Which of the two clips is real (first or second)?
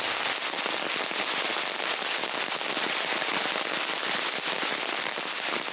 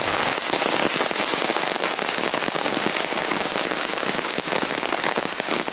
first